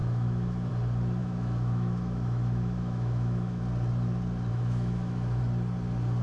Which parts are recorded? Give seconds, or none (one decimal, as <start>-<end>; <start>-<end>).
0.7-1.2; 3.6-4.5; 5.4-6.2